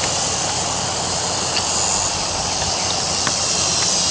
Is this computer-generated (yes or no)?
no